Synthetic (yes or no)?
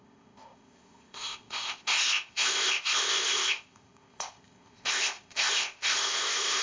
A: yes